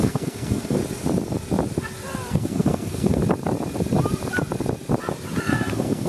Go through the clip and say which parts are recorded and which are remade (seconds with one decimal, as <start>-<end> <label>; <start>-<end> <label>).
0.0-0.8 remade; 0.8-2.3 recorded; 2.3-3.2 remade; 3.2-5.4 recorded; 5.4-6.1 remade